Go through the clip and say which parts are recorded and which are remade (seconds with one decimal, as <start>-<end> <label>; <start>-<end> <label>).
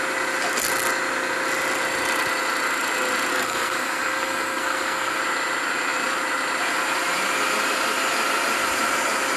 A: 0.0-3.3 recorded; 3.3-5.2 remade; 5.2-9.4 recorded